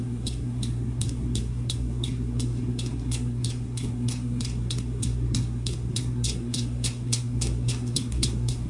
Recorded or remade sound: remade